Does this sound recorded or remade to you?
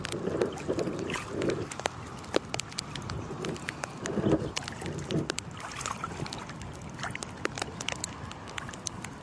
recorded